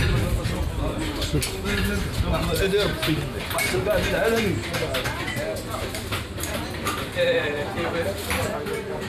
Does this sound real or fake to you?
real